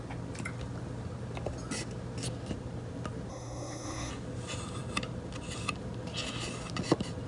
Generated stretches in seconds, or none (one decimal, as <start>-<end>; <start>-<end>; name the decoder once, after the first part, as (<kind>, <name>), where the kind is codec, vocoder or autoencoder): 3.3-4.1 (codec, SNAC)